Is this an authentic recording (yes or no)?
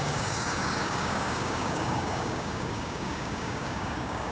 no